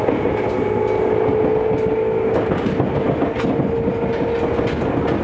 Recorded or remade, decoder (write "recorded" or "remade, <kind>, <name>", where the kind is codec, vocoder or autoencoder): recorded